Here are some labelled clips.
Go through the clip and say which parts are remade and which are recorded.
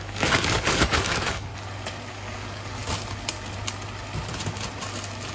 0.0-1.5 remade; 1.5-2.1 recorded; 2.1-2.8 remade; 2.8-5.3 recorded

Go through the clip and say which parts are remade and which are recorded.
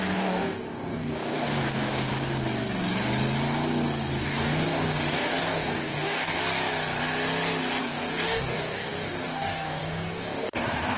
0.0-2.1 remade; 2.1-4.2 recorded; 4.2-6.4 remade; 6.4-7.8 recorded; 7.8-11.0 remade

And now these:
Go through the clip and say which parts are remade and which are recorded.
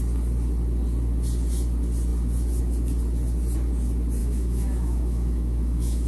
0.0-4.2 recorded; 4.2-6.1 remade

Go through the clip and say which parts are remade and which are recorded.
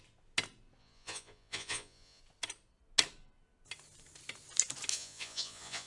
0.0-0.8 recorded; 0.8-2.2 remade; 2.2-4.9 recorded; 4.9-5.9 remade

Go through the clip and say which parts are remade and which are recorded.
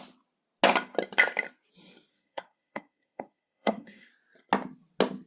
0.0-2.1 recorded; 2.1-4.1 remade; 4.1-5.3 recorded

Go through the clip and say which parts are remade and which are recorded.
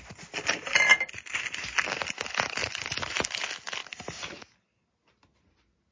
0.0-5.9 recorded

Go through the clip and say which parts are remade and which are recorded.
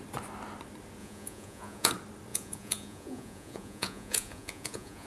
0.0-1.0 recorded; 1.0-1.9 remade; 1.9-2.3 recorded; 2.3-5.1 remade